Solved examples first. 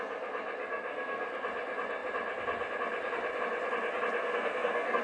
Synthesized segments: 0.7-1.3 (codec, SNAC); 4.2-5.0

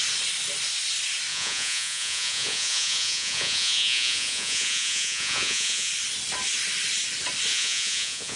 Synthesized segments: 1.3-5.9 (vocoder, Vocos); 7.5-8.4